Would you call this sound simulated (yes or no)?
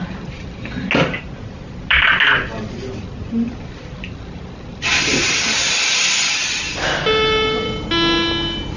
no